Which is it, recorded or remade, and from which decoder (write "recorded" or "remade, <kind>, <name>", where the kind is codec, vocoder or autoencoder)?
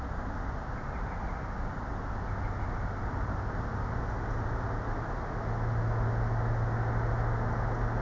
recorded